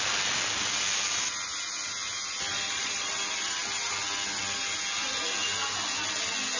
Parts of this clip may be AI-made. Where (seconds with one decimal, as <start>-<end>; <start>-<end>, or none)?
2.5-3.1